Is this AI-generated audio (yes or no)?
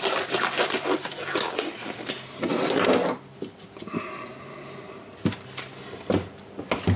no